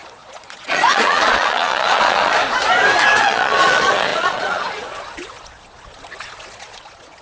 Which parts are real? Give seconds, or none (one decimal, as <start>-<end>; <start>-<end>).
2.4-3.2